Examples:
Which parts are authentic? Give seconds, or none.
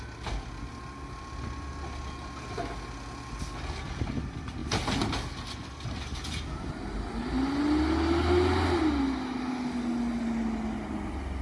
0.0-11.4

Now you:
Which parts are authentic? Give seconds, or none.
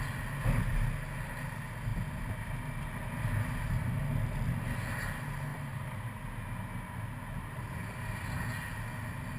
0.0-5.5; 6.2-9.4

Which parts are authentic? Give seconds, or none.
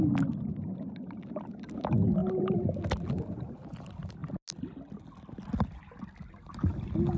0.0-7.2